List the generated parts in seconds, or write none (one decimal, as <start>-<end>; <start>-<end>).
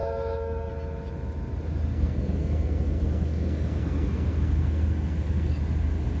0.0-0.7; 1.9-5.6